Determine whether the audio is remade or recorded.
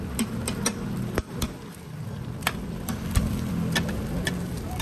recorded